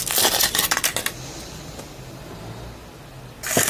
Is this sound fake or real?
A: real